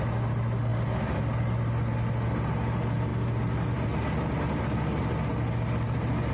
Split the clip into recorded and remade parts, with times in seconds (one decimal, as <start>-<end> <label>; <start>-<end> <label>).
0.0-6.3 recorded